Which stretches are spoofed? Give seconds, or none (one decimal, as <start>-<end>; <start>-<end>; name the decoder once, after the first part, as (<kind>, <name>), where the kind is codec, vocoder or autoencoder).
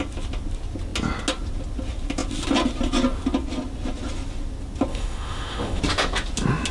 4.9-5.8 (autoencoder, DAC-VAE)